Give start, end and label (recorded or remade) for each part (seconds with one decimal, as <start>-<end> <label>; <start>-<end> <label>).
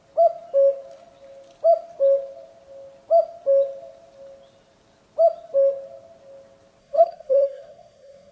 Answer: 0.0-6.8 recorded; 6.8-8.3 remade